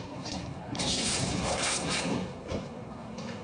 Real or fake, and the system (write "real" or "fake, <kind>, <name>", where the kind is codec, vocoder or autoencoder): fake, codec, SNAC